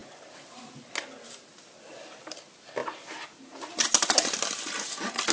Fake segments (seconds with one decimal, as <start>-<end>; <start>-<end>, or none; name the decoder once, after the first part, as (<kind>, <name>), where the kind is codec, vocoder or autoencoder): none